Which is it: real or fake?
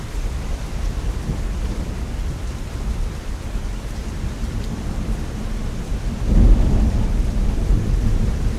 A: fake